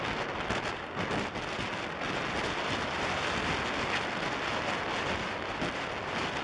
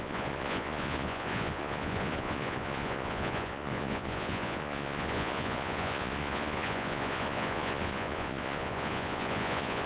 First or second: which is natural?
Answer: first